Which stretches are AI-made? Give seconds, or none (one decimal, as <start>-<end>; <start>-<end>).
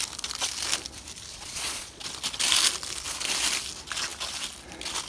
1.3-2.0